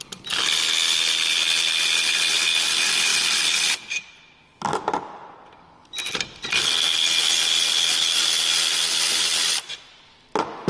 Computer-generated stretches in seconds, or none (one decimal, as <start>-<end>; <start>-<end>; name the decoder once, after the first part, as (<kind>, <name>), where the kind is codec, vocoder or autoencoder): none

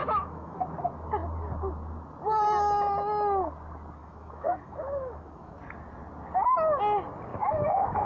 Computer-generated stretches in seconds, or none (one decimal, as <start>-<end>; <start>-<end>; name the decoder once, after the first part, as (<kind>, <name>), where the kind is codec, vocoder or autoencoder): 0.0-0.6 (autoencoder, DAC-VAE); 4.0-5.6; 7.3-8.1

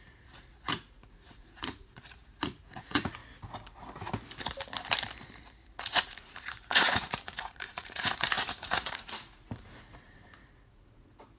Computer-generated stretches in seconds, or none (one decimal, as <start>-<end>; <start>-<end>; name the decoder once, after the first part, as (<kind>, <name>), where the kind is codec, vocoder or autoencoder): 0.0-3.2 (vocoder, Vocos); 5.8-11.4